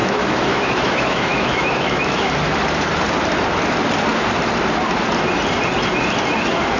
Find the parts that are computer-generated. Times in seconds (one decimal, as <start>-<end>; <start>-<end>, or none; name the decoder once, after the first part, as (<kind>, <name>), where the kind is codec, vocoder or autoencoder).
0.0-2.3 (autoencoder, DAC-VAE)